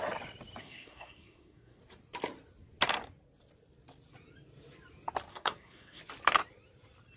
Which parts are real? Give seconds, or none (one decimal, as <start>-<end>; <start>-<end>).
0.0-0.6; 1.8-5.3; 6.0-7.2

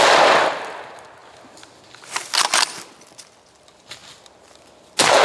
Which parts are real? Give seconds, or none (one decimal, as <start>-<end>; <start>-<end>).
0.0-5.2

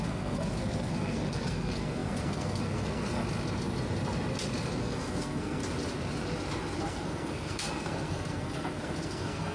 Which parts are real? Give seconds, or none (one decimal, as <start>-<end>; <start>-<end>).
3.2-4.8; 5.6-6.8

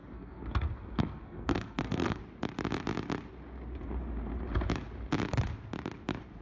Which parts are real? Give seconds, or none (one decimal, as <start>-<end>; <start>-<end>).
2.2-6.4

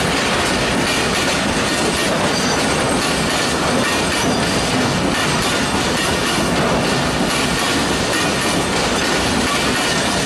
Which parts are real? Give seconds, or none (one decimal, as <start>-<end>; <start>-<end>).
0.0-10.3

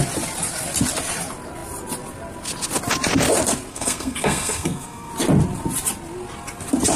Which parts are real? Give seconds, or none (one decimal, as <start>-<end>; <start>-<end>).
0.0-3.7; 5.1-7.0

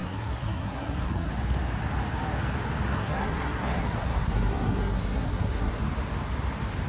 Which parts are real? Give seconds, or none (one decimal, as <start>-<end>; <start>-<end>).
1.3-2.9; 5.7-6.9

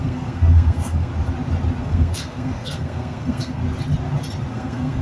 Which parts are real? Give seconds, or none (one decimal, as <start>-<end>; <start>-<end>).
1.1-1.8; 3.6-4.5